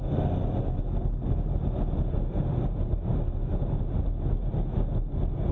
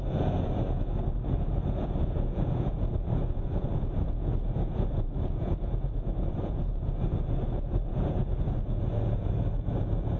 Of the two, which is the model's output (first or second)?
second